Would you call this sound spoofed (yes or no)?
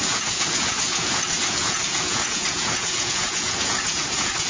yes